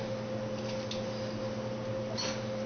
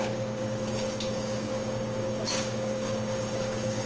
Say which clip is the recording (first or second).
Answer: first